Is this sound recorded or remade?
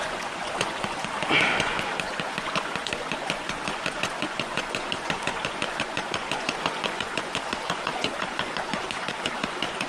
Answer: remade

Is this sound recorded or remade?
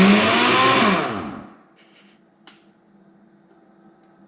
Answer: recorded